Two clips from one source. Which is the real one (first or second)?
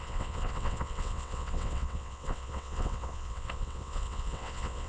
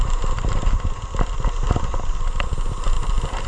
second